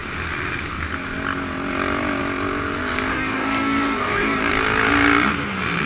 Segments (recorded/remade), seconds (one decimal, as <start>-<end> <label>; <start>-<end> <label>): 0.0-3.1 recorded; 3.1-4.4 remade; 4.4-5.9 recorded